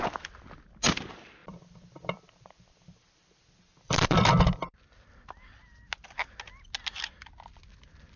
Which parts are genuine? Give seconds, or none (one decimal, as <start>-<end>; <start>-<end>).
0.0-1.4; 4.5-8.2